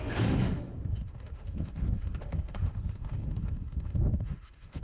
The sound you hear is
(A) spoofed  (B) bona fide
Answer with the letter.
A